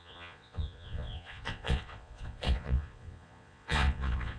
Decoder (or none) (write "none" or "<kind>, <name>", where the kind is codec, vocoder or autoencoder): vocoder, Vocos